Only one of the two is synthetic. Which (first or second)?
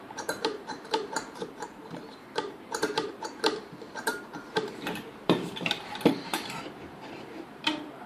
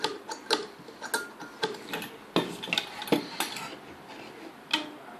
first